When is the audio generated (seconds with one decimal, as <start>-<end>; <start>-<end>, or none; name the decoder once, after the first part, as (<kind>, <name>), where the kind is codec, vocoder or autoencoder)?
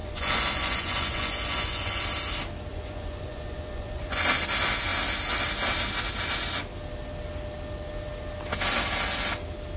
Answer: 0.0-2.0 (vocoder, Vocos); 2.7-4.2